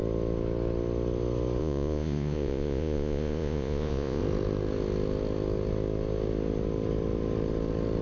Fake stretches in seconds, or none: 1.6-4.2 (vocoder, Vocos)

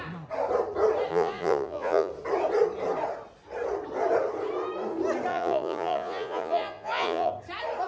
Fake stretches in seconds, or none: 1.1-2.1 (vocoder, Vocos); 5.3-7.3

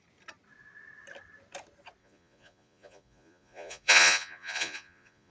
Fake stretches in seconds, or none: 2.0-5.3 (vocoder, Vocos)

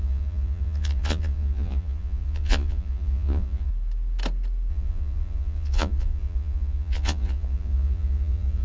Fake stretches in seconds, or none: 0.0-3.7 (vocoder, Vocos); 4.7-8.6

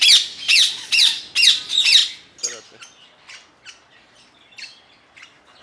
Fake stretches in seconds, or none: 0.5-1.2 (vocoder, Vocos)

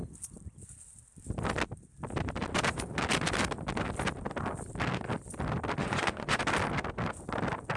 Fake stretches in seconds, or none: 5.8-6.4 (vocoder, Vocos)

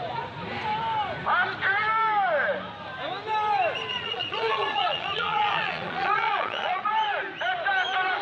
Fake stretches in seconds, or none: 3.9-6.9 (vocoder, Vocos)